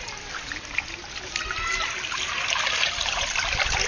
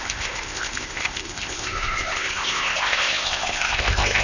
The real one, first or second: first